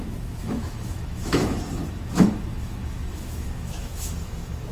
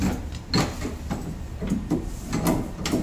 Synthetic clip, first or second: first